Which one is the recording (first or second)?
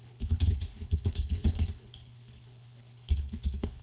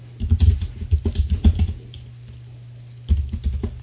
second